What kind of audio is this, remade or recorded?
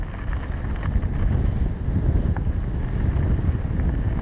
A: recorded